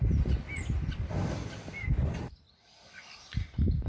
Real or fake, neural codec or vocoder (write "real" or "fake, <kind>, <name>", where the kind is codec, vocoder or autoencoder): real